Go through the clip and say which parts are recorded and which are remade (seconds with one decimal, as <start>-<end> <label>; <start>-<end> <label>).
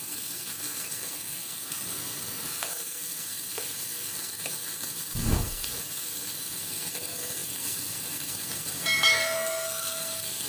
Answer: 0.0-10.5 remade